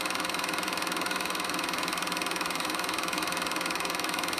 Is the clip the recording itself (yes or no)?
no